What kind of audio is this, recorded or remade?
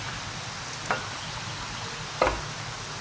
recorded